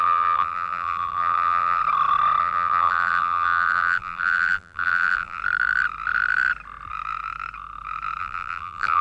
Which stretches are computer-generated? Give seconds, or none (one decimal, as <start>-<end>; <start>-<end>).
0.0-1.8; 2.4-5.4; 8.2-9.0